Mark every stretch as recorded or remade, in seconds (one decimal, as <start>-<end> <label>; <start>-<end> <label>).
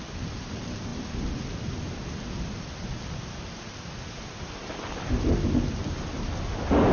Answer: 0.0-6.9 recorded